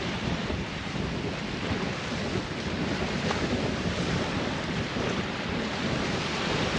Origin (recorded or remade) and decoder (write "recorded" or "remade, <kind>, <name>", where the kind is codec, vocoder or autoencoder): remade, vocoder, BigVGAN v2